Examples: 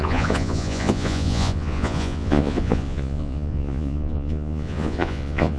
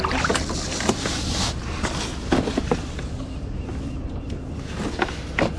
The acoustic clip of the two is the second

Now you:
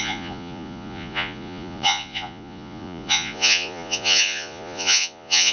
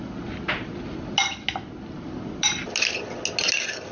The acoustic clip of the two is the second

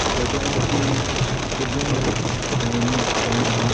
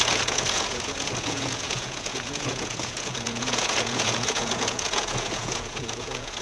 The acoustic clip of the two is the first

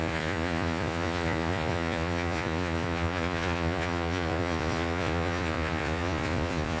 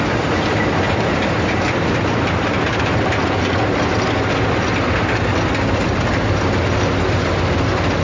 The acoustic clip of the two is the second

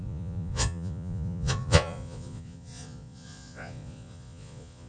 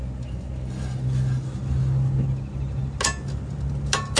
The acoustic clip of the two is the second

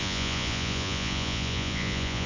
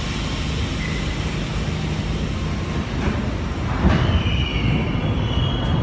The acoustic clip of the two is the second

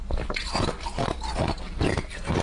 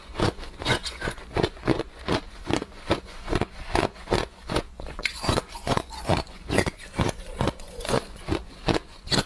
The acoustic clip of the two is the first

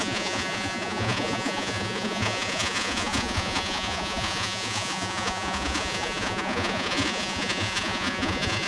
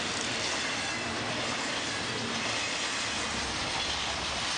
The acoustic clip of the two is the second